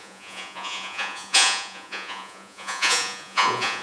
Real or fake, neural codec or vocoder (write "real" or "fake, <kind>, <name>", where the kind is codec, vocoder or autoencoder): fake, vocoder, Vocos